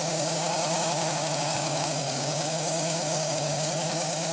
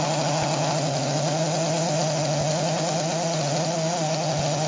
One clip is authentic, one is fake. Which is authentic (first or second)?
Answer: second